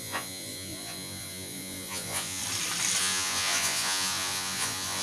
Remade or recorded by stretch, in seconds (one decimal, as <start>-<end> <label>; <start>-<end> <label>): 0.0-2.4 remade; 2.4-3.0 recorded; 3.0-5.0 remade